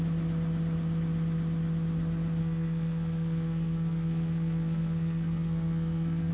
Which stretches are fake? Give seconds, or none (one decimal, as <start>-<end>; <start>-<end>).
2.4-6.3